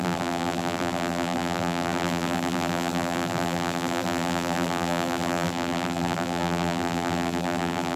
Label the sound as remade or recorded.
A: remade